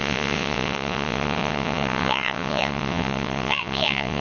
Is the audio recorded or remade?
remade